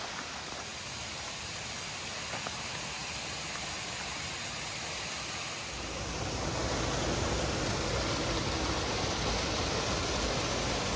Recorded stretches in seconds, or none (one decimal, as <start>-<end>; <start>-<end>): 0.0-11.0